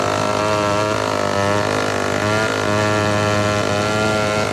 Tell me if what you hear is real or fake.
real